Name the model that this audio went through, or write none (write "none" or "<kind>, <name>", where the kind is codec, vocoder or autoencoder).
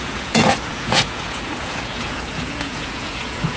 vocoder, Vocos